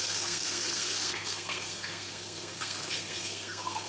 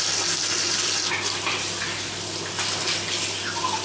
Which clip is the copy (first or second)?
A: first